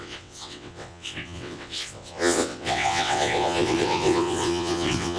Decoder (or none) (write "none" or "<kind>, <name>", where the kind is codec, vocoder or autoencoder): vocoder, WaveNeXt